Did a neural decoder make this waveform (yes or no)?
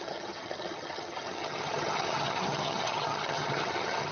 yes